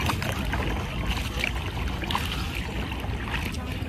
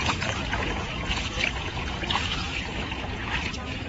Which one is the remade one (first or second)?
second